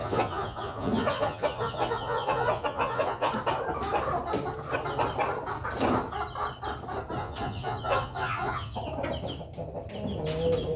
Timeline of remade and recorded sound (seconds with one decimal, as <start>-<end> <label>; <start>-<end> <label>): 0.0-3.3 remade; 3.3-7.2 recorded; 7.2-8.8 remade; 8.8-10.8 recorded